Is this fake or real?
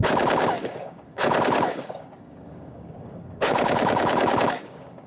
fake